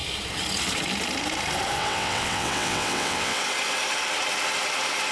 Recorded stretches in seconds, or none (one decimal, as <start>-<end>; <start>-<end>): 0.0-1.8; 3.4-5.1